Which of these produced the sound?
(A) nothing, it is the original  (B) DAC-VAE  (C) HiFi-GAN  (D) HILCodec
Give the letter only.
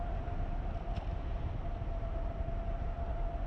A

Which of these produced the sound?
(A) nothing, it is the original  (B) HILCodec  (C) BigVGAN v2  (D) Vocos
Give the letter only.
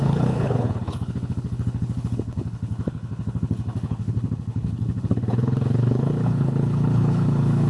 B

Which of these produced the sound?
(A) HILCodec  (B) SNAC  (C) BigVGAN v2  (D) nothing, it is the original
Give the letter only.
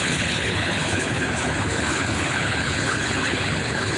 A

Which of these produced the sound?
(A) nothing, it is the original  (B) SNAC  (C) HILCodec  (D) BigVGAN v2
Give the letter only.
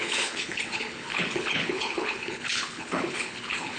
C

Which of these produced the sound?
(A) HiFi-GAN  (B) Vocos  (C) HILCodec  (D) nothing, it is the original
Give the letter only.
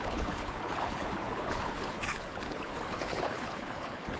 C